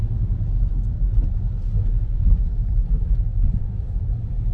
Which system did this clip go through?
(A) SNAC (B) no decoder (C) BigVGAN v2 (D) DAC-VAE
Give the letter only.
B